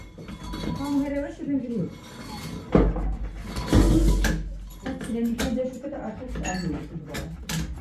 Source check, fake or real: real